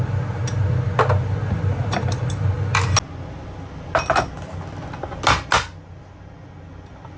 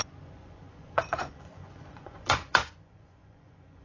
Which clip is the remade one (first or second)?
second